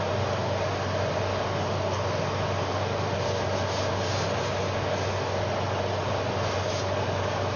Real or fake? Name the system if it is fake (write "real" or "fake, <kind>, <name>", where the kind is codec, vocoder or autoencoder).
real